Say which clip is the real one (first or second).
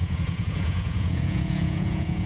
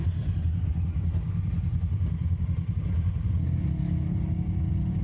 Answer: second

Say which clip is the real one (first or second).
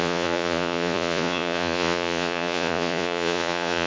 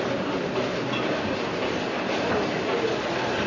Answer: second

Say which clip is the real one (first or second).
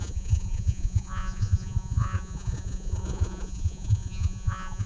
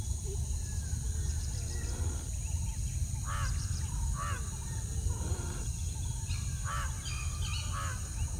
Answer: second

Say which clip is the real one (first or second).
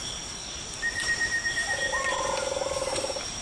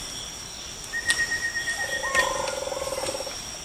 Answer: second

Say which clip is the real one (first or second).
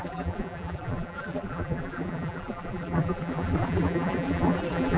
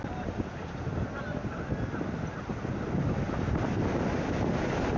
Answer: second